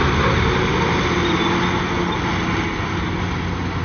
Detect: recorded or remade recorded